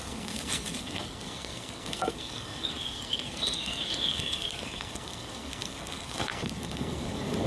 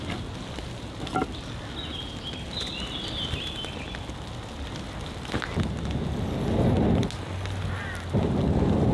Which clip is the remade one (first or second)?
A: first